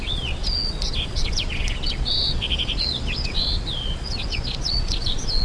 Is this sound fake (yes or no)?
yes